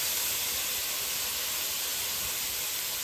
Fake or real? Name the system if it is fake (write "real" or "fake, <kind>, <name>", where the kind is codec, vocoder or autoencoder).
real